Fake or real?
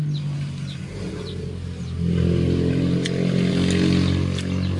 real